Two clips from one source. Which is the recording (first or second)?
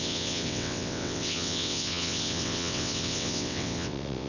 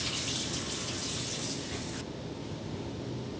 second